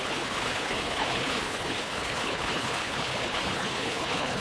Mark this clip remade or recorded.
remade